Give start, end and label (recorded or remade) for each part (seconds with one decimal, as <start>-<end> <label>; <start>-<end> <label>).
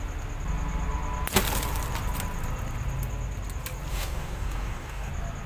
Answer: 0.0-3.9 recorded; 3.9-5.1 remade; 5.1-5.5 recorded